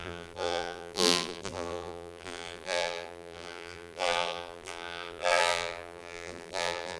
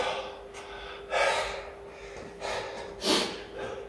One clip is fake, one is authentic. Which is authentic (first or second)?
second